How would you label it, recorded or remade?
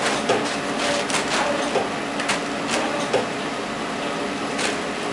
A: recorded